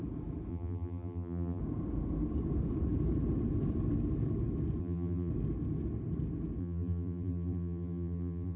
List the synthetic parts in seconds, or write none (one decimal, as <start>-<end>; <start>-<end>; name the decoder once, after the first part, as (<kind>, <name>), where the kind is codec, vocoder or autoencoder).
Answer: 0.5-1.6 (vocoder, BigVGAN v2); 4.8-5.3; 6.6-8.6